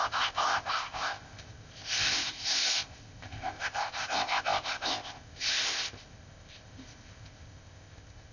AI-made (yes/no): yes